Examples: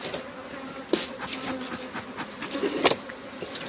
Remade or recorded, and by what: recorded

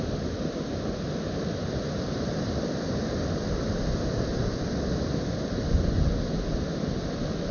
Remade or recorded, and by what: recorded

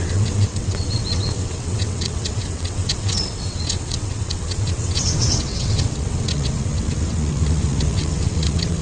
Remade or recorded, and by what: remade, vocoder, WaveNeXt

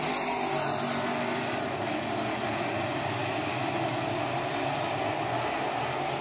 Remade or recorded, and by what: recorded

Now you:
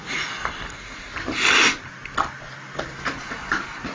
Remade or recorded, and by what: recorded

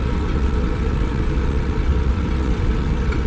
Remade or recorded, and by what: remade, vocoder, WaveNeXt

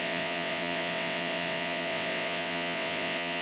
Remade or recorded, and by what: remade, vocoder, WaveNeXt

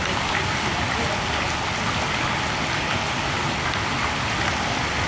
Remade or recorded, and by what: recorded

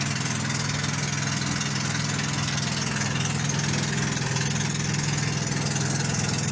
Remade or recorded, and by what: recorded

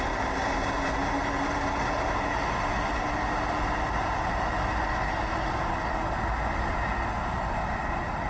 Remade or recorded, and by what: recorded